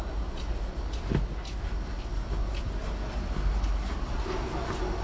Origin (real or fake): real